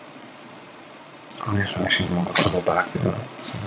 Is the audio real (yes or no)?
no